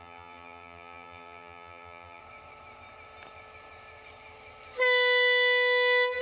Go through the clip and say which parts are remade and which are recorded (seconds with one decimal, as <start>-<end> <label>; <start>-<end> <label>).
0.0-2.2 remade; 2.2-6.2 recorded